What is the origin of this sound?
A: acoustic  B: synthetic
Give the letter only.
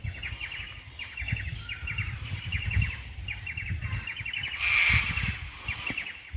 A